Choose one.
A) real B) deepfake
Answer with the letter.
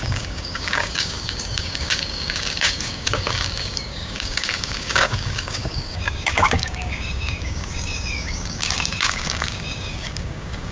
B